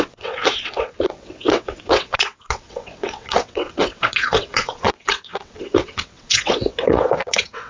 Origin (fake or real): fake